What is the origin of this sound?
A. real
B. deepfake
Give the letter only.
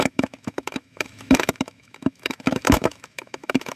B